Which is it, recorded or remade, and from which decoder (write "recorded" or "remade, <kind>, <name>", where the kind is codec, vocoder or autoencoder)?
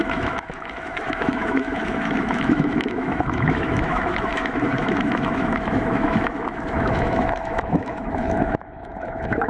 remade, autoencoder, DAC-VAE